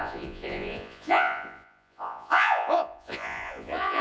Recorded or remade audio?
remade